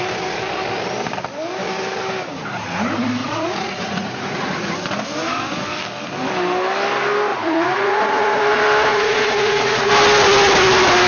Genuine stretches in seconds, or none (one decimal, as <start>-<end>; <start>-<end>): 0.0-3.2; 4.7-7.3; 8.4-8.9; 9.9-11.1